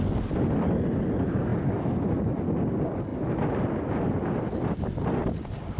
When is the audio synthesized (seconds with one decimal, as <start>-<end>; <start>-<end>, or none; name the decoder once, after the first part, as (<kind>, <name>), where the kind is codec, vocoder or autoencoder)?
1.5-2.0 (vocoder, BigVGAN v2); 5.2-5.8